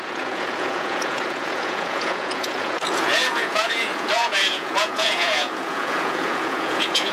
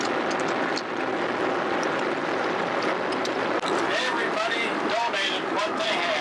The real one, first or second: second